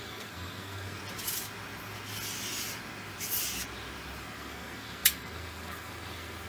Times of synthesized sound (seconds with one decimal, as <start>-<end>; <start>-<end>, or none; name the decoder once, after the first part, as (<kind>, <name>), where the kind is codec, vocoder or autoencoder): 0.0-1.0 (codec, SNAC); 4.2-6.5